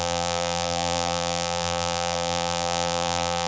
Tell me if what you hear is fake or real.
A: fake